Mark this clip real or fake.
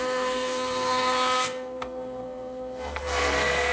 fake